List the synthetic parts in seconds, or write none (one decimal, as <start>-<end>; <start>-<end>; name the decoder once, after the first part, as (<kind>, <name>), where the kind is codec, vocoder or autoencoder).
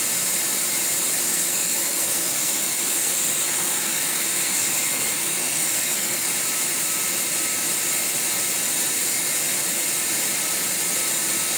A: 1.3-6.3 (codec, SNAC)